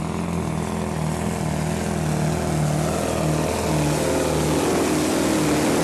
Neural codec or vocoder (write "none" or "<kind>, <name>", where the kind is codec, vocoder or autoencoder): none